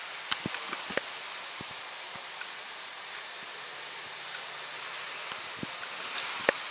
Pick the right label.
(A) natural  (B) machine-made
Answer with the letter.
A